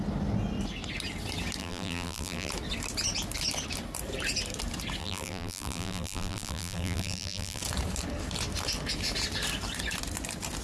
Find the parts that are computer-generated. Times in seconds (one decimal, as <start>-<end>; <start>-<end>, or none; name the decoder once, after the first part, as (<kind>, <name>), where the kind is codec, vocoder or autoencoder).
1.6-2.5 (vocoder, BigVGAN v2); 5.0-7.6